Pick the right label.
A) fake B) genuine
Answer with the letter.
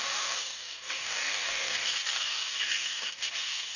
A